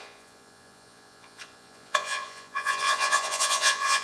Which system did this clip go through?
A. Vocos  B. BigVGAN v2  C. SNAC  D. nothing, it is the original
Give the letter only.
A